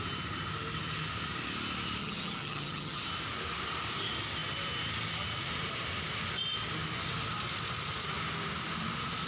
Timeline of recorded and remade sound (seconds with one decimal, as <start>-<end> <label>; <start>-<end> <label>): 0.0-2.0 recorded; 2.0-3.0 remade; 3.0-9.3 recorded